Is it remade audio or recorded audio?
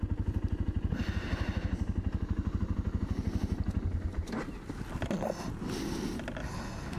recorded